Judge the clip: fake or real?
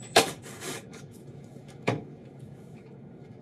fake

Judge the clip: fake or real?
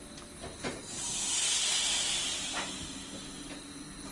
real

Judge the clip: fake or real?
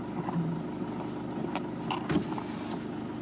real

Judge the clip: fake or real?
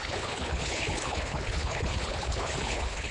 fake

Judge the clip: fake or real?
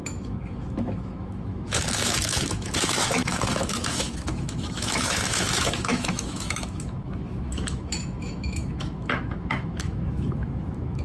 fake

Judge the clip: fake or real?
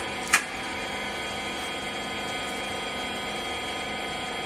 real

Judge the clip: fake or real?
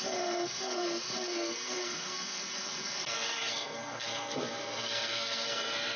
fake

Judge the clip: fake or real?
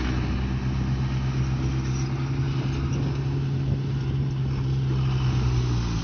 real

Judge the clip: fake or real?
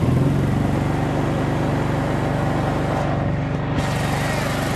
real